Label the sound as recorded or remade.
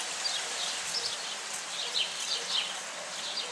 remade